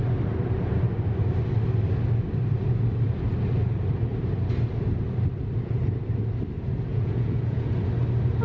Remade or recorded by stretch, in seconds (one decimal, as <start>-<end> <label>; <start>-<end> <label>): 0.0-6.9 recorded; 6.9-7.7 remade; 7.7-8.4 recorded